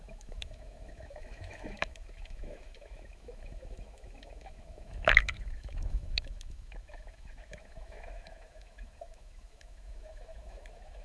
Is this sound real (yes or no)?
no